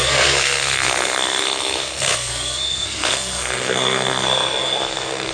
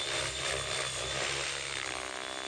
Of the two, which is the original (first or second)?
second